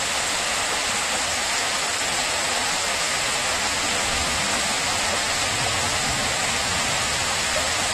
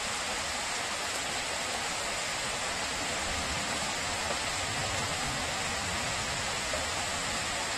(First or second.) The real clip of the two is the first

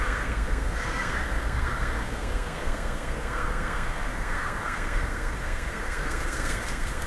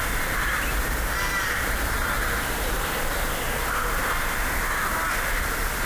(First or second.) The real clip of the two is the second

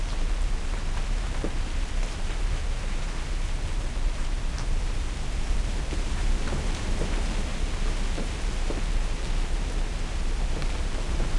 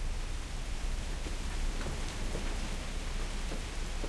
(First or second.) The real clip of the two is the second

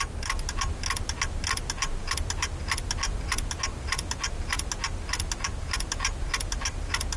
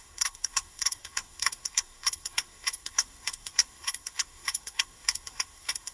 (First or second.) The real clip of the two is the first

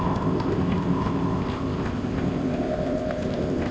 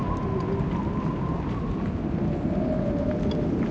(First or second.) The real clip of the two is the second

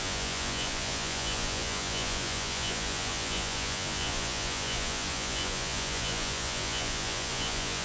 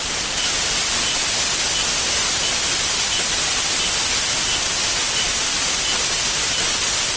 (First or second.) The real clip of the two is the second